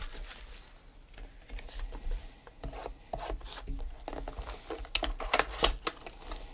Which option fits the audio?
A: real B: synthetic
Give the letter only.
A